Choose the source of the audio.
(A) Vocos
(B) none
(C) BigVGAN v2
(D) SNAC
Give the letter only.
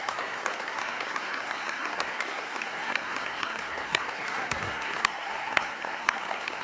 D